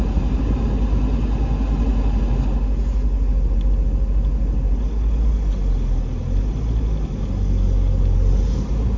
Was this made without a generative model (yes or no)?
yes